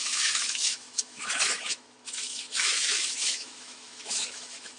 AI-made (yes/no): yes